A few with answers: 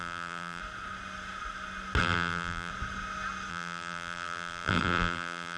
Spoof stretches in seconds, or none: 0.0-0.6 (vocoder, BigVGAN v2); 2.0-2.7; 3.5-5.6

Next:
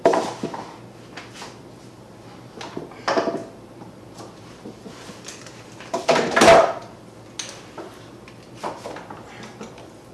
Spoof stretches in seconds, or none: none